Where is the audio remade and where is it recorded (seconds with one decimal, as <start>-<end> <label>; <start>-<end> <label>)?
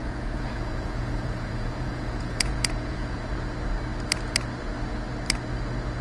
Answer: 0.0-3.3 remade; 3.3-6.0 recorded